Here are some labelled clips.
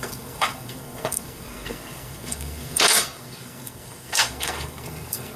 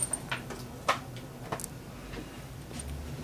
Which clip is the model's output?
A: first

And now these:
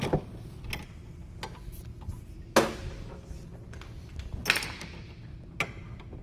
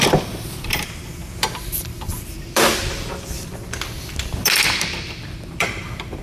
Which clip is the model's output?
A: second